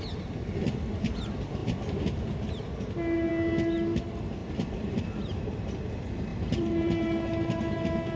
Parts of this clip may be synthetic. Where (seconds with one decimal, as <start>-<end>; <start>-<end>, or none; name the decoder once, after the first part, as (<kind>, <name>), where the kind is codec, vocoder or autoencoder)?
4.4-5.0 (vocoder, BigVGAN v2); 6.3-7.6